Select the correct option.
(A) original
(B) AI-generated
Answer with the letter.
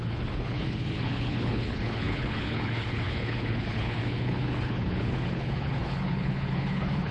B